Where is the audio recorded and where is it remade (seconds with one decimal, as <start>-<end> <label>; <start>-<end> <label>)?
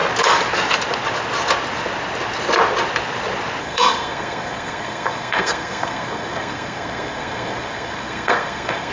0.0-3.6 recorded; 3.6-8.9 remade